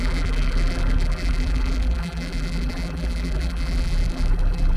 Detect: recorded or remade remade